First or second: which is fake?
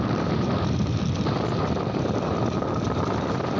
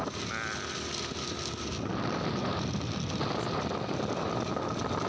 first